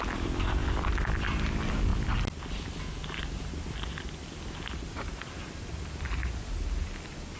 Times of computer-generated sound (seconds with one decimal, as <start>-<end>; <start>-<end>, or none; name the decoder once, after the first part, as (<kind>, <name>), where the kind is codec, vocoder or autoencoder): none

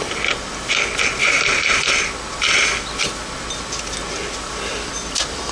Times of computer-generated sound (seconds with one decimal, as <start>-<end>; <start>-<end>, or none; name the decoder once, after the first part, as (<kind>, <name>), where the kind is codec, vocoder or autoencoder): 1.2-1.8 (vocoder, BigVGAN v2)

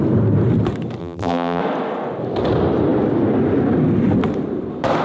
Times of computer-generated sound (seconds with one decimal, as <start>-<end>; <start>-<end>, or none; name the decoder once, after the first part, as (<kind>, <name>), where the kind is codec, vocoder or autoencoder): 1.0-1.6 (vocoder, BigVGAN v2)

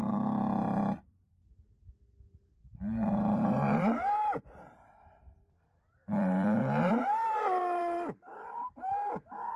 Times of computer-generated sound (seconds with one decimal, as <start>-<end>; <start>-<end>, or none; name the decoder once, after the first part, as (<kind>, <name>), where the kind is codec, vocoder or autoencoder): 0.0-1.3 (vocoder, BigVGAN v2); 2.6-5.2; 6.0-9.2

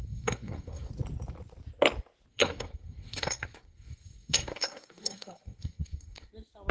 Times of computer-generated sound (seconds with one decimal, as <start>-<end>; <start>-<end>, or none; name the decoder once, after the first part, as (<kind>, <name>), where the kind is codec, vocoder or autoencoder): 0.0-0.9 (codec, SNAC); 2.3-6.3

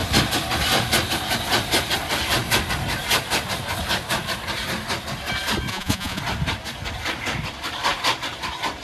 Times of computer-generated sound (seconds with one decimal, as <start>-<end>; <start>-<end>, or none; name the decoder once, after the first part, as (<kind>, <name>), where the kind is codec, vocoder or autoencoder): 5.7-6.2 (vocoder, Vocos)

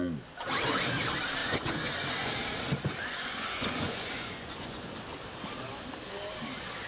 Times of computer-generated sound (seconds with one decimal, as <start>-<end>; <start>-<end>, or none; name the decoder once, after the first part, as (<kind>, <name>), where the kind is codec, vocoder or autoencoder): 1.4-2.3 (vocoder, Vocos); 3.1-4.9